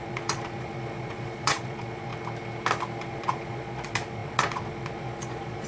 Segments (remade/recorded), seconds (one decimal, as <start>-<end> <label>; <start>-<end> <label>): 0.0-2.1 remade; 2.1-3.0 recorded; 3.0-5.7 remade